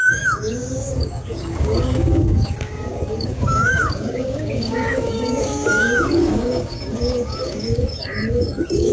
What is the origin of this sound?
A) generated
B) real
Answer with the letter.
A